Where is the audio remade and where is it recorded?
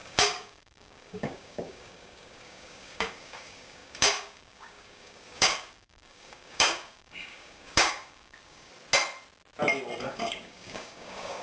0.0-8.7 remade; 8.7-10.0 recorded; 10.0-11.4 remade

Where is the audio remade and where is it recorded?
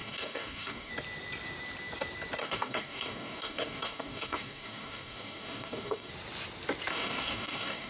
0.0-0.9 remade; 0.9-2.4 recorded; 2.4-6.1 remade; 6.1-6.9 recorded; 6.9-7.9 remade